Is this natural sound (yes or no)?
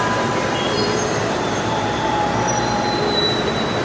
no